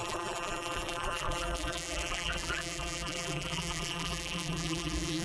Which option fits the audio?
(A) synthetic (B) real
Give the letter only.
A